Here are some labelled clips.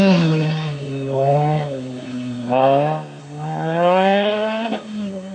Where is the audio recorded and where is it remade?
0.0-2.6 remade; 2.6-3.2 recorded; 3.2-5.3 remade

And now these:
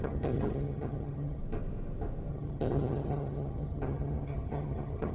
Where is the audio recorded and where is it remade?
0.0-1.4 remade; 1.4-2.3 recorded; 2.3-5.1 remade

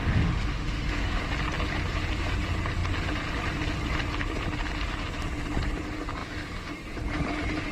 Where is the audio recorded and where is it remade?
0.0-1.2 remade; 1.2-7.7 recorded